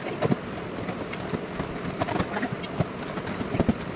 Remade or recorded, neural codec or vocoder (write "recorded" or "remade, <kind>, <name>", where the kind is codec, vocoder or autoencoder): recorded